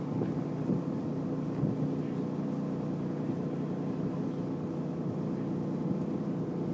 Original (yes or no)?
yes